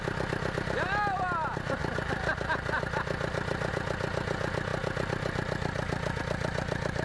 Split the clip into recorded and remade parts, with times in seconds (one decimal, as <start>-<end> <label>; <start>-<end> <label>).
0.0-7.0 recorded